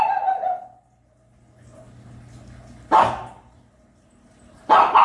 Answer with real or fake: real